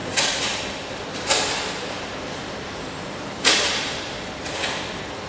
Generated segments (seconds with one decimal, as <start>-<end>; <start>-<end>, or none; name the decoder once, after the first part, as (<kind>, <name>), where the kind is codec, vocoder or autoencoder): 0.0-0.6 (vocoder, BigVGAN v2); 1.1-4.3